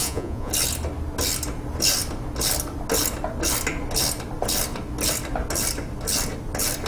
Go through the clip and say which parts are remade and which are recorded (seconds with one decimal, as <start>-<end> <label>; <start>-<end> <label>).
0.0-0.5 remade; 0.5-6.9 recorded